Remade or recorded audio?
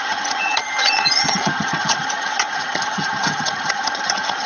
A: remade